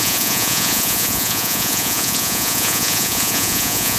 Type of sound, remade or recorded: remade